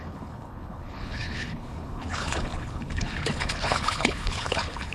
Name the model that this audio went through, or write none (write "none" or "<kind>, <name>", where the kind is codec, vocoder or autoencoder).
codec, HILCodec